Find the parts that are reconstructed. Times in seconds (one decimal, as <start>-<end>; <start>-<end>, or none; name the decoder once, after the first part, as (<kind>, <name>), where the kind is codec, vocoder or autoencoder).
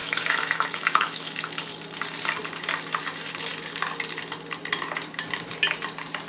0.0-1.6 (autoencoder, DAC-VAE)